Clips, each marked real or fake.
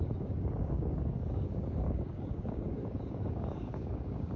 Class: fake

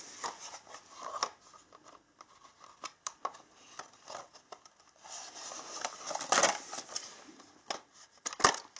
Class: real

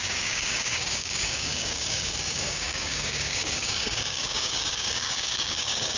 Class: fake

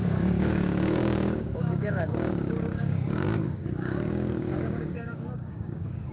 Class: fake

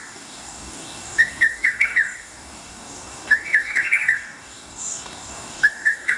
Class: fake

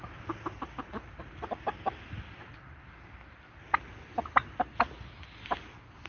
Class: real